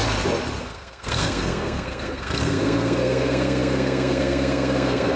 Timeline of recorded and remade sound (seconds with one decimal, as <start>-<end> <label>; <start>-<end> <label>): 0.0-0.6 recorded; 0.6-5.2 remade